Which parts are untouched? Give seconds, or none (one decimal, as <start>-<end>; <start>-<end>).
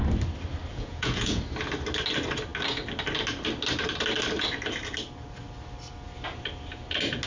0.0-0.7; 1.4-7.3